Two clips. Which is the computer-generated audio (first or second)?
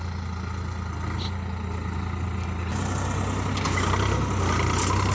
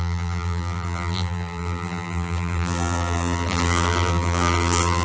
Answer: second